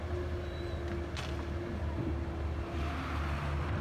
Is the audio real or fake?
real